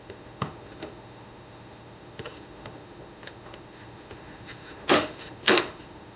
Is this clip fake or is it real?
fake